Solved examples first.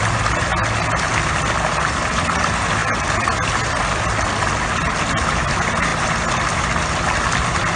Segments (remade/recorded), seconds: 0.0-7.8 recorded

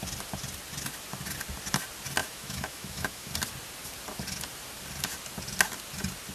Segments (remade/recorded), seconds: 0.0-2.2 recorded; 2.2-3.3 remade; 3.3-6.3 recorded

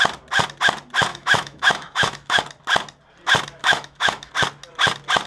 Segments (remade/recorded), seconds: 0.0-1.1 recorded; 1.1-2.4 remade; 2.4-3.6 recorded; 3.6-4.3 remade; 4.3-5.3 recorded

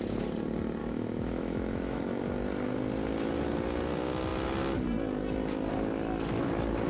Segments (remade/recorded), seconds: 0.0-0.8 recorded; 0.8-2.0 remade; 2.0-6.9 recorded

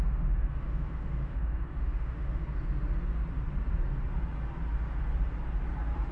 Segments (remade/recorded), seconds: 0.0-2.4 remade; 2.4-6.1 recorded

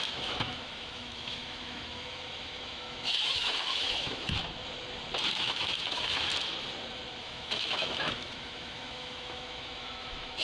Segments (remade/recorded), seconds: 0.0-4.4 remade; 4.4-5.3 recorded; 5.3-6.3 remade; 6.3-7.2 recorded; 7.2-10.4 remade